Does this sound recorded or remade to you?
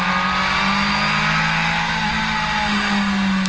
recorded